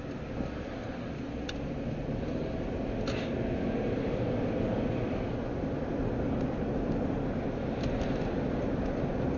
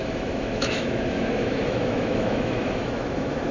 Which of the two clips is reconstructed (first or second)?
second